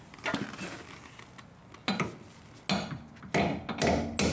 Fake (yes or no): no